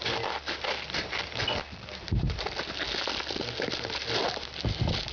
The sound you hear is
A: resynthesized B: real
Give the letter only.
B